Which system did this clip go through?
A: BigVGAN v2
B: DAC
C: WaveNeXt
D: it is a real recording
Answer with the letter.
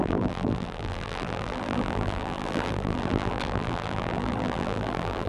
A